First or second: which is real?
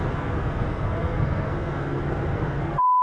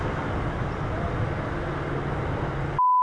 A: second